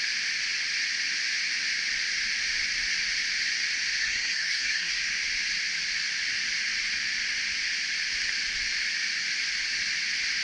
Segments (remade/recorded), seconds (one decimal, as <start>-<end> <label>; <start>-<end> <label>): 0.0-4.0 recorded; 4.0-5.0 remade; 5.0-10.4 recorded